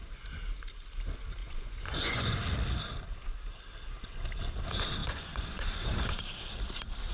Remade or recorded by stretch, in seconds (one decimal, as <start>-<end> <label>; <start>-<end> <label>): 0.0-1.4 recorded; 1.4-2.4 remade; 2.4-5.0 recorded; 5.0-6.2 remade; 6.2-7.1 recorded